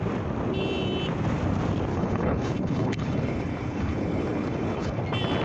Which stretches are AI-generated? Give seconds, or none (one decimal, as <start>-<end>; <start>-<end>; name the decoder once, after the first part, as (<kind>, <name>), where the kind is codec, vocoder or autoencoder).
1.9-5.0 (codec, HILCodec)